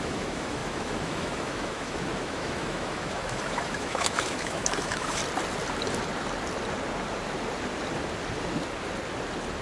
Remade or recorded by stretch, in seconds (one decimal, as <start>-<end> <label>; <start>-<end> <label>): 0.0-5.2 remade; 5.2-9.6 recorded